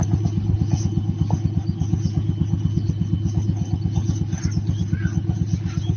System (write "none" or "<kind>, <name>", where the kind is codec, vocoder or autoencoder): none